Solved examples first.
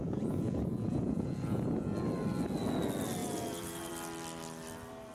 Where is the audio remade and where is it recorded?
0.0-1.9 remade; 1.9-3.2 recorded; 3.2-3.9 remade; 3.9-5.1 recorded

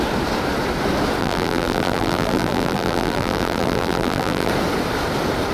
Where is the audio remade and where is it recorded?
0.0-1.2 recorded; 1.2-4.5 remade; 4.5-5.5 recorded

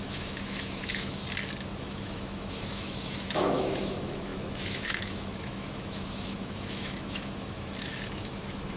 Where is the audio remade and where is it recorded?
0.0-1.2 remade; 1.2-1.8 recorded; 1.8-8.8 remade

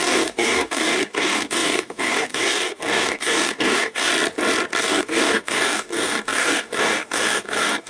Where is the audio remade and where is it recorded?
0.0-4.1 remade; 4.1-4.8 recorded; 4.8-7.9 remade